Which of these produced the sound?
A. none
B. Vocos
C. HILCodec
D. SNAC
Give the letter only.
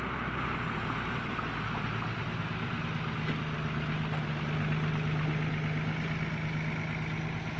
A